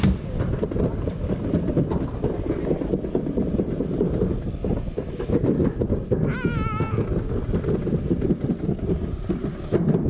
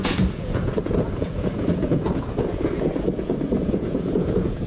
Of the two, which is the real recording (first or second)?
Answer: first